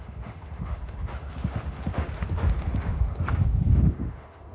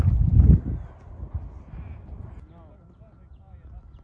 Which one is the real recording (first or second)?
second